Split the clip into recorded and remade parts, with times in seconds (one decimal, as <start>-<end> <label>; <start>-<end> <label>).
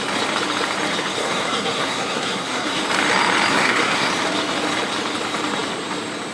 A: 0.0-1.2 recorded; 1.2-2.8 remade; 2.8-3.5 recorded; 3.5-4.1 remade; 4.1-6.3 recorded